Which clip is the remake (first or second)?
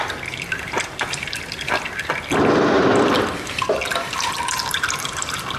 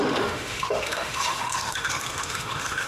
second